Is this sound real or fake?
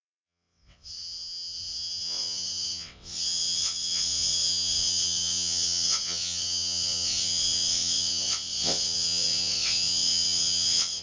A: fake